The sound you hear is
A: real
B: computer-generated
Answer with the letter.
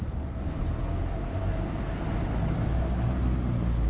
A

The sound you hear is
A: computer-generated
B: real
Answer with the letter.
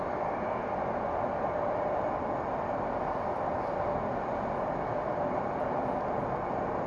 B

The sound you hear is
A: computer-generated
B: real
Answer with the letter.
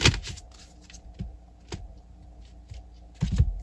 B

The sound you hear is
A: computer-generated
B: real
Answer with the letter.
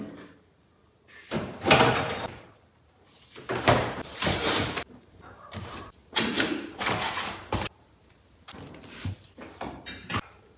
A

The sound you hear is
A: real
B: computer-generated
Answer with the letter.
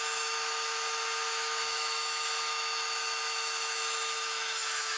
B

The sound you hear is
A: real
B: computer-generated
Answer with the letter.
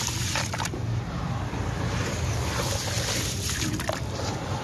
A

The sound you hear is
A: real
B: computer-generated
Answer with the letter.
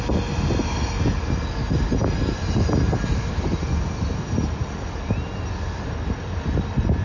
A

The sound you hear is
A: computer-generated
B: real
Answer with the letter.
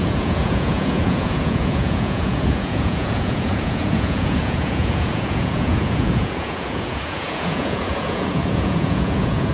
A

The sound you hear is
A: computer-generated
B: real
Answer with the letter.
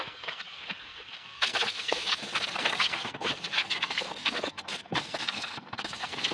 A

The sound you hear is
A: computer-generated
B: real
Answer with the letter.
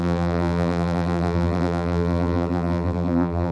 A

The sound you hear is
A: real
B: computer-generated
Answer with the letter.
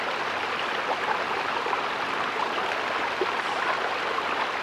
A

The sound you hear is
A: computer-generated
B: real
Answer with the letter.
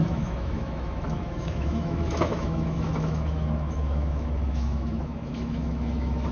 A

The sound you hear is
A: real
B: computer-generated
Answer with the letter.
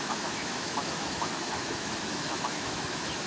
B